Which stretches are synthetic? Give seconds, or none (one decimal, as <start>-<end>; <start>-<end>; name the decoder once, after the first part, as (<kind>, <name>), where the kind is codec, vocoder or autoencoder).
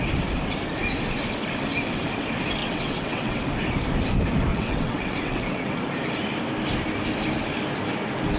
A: 2.6-3.4 (vocoder, WaveNeXt); 4.5-5.7